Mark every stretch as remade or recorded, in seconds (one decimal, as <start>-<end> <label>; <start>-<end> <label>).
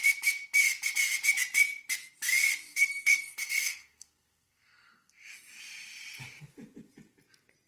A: 0.0-2.7 recorded; 2.7-5.3 remade; 5.3-7.7 recorded